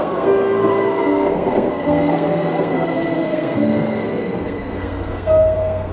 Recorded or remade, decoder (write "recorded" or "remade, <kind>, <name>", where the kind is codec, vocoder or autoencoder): remade, codec, SNAC